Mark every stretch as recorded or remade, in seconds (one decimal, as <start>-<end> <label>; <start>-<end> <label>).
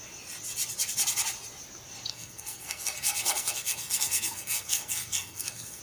0.0-2.1 recorded; 2.1-5.8 remade